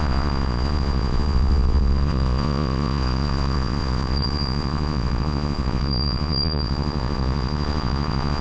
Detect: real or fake fake